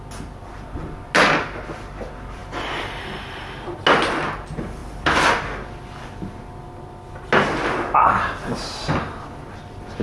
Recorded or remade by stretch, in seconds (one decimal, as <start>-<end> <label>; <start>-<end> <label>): 0.0-10.0 recorded